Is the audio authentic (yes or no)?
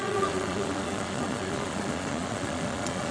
no